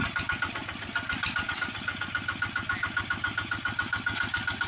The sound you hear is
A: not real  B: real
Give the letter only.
B